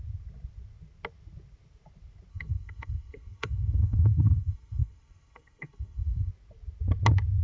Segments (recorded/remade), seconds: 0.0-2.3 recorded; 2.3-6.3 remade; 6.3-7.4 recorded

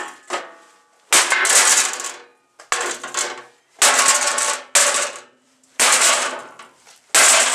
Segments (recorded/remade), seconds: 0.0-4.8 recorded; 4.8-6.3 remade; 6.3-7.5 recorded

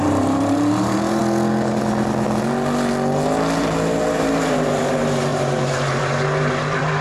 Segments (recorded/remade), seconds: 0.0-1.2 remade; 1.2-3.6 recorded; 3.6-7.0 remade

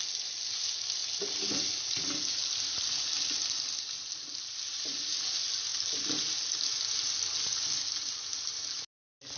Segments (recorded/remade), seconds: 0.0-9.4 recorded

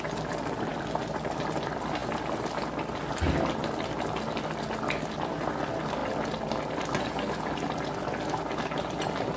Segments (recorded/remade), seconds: 0.0-9.4 recorded

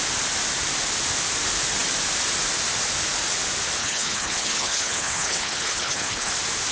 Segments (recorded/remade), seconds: 0.0-3.8 recorded; 3.8-6.3 remade; 6.3-6.7 recorded

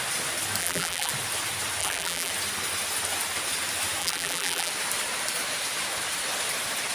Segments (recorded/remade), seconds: 0.0-0.6 recorded; 0.6-1.1 remade; 1.1-1.8 recorded; 1.8-2.3 remade; 2.3-4.0 recorded; 4.0-4.7 remade; 4.7-6.9 recorded